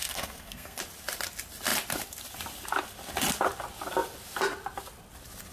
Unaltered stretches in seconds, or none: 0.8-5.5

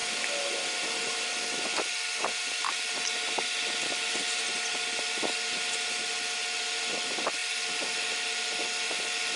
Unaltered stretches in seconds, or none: 0.0-9.4

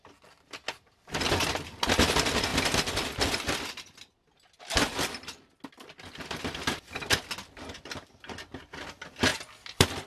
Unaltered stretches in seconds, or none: 0.0-9.3